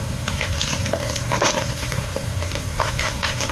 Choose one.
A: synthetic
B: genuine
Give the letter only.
A